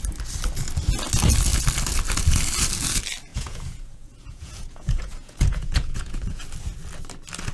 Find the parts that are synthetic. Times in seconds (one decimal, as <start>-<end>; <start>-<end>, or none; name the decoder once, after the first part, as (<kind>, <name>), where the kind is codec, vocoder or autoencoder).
3.3-6.4 (vocoder, Vocos)